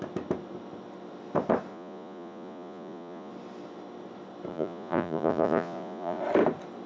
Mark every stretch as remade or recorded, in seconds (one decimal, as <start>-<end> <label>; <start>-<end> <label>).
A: 0.0-1.7 recorded; 1.7-3.3 remade; 3.3-4.5 recorded; 4.5-6.2 remade; 6.2-6.9 recorded